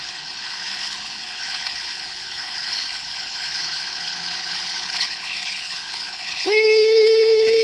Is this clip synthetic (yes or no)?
yes